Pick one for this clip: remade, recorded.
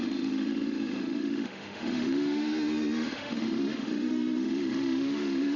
remade